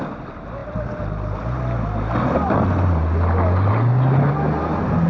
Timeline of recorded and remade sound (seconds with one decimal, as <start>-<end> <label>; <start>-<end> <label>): 0.0-5.1 recorded